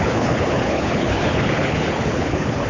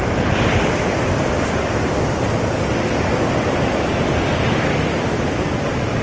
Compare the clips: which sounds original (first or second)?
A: second